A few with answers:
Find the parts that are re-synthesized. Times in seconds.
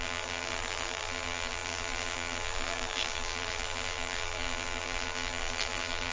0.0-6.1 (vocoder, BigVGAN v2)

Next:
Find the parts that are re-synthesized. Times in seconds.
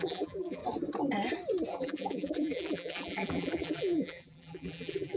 0.0-0.6 (vocoder, BigVGAN v2); 1.7-5.2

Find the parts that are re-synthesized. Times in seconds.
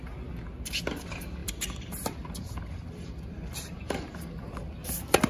1.4-4.5 (vocoder, BigVGAN v2)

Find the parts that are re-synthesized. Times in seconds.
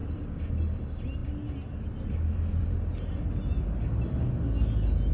0.0-0.5 (vocoder, BigVGAN v2)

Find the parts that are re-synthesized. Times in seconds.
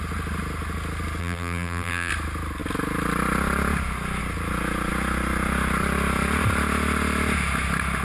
1.2-2.1 (vocoder, BigVGAN v2)